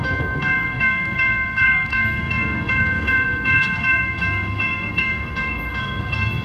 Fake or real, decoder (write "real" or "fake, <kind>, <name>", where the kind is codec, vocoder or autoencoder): fake, codec, SNAC